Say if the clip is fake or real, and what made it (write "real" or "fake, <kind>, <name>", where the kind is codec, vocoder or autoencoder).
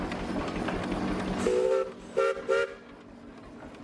real